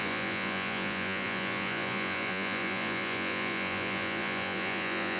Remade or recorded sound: remade